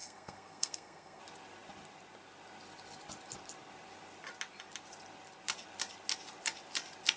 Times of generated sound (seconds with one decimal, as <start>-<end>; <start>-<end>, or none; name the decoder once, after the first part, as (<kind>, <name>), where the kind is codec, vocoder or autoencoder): 0.0-1.2 (codec, SNAC)